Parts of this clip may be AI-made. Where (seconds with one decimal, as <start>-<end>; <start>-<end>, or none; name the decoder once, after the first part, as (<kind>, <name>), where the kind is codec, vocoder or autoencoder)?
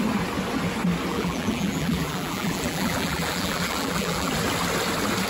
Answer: 1.1-4.3 (vocoder, BigVGAN v2)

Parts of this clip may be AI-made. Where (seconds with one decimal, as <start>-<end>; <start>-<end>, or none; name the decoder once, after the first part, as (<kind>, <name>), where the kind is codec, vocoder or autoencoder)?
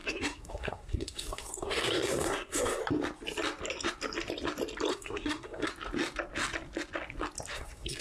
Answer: 0.0-2.8 (codec, SNAC); 4.9-5.7; 7.5-8.0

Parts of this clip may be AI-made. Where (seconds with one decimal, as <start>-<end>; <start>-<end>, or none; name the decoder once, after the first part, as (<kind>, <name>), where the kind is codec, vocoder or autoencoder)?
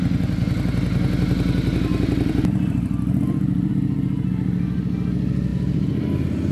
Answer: 1.9-3.7 (vocoder, BigVGAN v2); 5.5-6.5